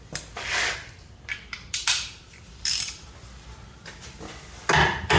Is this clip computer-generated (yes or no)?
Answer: yes